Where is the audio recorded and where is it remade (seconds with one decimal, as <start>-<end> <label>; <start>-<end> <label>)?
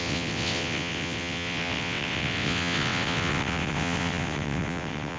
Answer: 0.0-5.2 remade